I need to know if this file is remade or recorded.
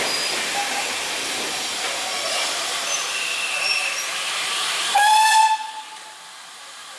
remade